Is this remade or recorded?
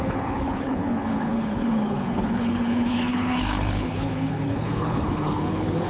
remade